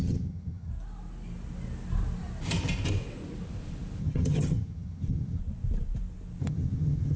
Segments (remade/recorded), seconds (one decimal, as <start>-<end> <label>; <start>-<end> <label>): 0.0-0.7 remade; 0.7-4.0 recorded; 4.0-5.4 remade; 5.4-6.4 recorded; 6.4-7.2 remade